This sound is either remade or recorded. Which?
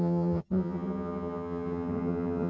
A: remade